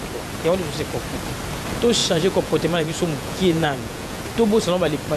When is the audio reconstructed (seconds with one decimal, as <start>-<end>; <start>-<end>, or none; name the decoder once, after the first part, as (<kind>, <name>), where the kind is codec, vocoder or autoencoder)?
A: 2.0-4.2 (vocoder, Vocos)